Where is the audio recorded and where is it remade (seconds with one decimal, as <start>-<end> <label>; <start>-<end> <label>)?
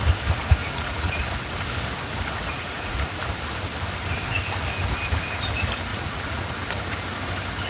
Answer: 0.0-0.6 recorded; 0.6-1.2 remade; 1.2-2.5 recorded; 2.5-3.2 remade; 3.2-5.9 recorded; 5.9-6.5 remade; 6.5-7.7 recorded